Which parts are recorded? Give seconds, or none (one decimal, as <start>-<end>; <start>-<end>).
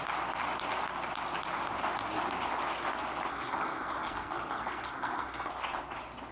0.0-3.3; 5.5-6.3